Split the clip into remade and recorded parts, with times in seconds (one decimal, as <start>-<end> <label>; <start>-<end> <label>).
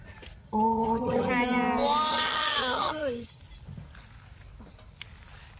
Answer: 0.0-0.4 recorded; 0.4-1.3 remade; 1.3-2.1 recorded; 2.1-3.4 remade; 3.4-5.6 recorded